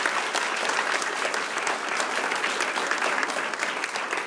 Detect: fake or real real